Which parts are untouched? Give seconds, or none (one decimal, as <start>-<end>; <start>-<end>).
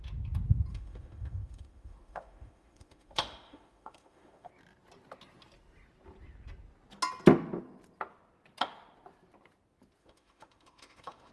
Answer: 0.0-0.7; 4.5-10.0